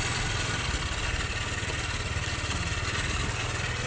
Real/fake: real